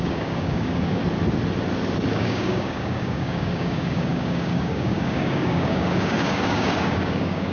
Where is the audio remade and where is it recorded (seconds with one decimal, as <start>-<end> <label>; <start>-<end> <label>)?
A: 0.0-1.0 remade; 1.0-2.1 recorded; 2.1-7.5 remade